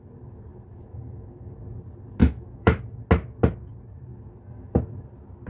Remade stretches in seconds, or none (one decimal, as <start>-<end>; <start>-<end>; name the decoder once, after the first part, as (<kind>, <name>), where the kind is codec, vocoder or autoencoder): 2.2-2.8 (autoencoder, DAC-VAE)

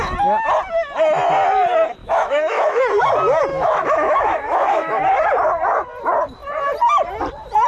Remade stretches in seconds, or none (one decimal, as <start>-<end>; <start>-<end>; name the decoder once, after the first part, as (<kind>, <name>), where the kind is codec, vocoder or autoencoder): 2.0-2.8 (autoencoder, DAC-VAE); 3.5-5.0

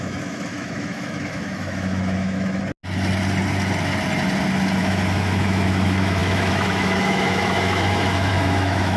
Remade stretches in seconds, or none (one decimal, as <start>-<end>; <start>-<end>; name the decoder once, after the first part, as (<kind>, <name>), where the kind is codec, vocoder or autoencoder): 0.0-2.6 (autoencoder, DAC-VAE); 4.8-9.0

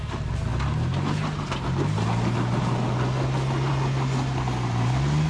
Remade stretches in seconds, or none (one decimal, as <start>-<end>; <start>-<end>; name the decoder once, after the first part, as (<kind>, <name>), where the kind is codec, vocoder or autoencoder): none

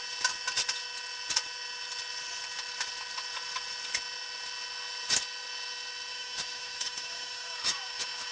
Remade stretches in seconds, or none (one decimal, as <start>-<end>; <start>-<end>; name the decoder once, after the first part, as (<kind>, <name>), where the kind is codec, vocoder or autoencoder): 6.1-8.3 (autoencoder, DAC-VAE)

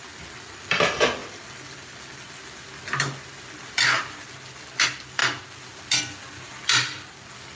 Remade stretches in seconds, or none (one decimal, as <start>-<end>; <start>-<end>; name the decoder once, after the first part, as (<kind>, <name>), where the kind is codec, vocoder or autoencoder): none